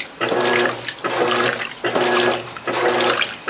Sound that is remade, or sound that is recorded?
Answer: recorded